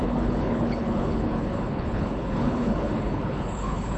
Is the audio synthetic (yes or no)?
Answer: yes